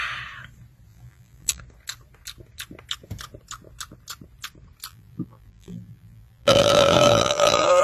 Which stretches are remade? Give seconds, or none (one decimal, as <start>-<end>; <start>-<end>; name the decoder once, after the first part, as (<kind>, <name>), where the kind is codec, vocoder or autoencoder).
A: 0.9-1.6 (vocoder, BigVGAN v2); 4.9-7.8